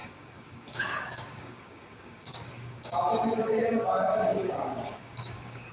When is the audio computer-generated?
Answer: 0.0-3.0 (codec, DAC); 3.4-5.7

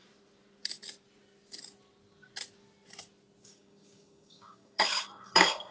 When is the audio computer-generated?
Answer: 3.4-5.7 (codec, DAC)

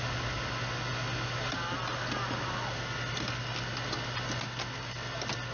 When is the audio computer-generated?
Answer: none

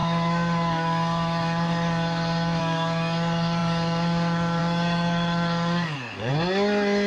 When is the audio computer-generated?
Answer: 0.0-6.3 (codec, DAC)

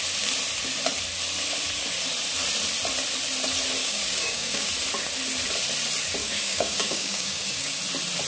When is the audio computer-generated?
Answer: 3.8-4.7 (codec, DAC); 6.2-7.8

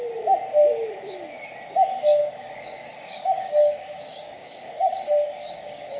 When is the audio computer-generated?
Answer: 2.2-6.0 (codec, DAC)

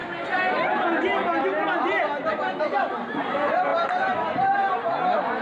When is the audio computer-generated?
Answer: none

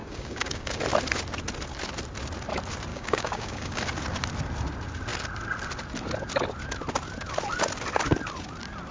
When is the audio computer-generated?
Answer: 0.0-0.8 (codec, DAC); 2.9-3.8